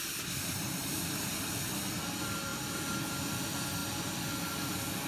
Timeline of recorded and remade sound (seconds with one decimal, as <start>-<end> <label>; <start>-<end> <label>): 0.0-5.1 recorded